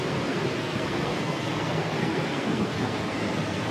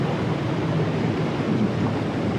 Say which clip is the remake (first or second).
first